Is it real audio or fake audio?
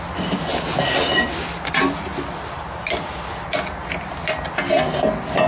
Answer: real